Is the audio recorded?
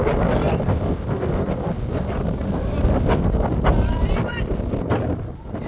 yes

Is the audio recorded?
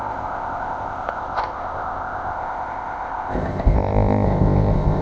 no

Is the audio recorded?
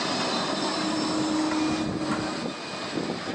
yes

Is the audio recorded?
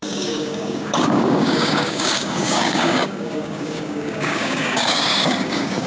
no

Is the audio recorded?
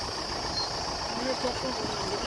yes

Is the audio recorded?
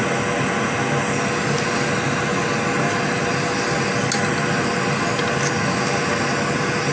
yes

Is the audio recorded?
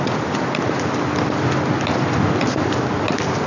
yes